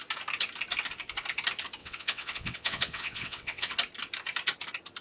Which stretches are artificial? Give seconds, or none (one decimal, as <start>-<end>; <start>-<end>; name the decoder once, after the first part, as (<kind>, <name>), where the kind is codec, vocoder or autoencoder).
1.8-3.7 (vocoder, WaveNeXt)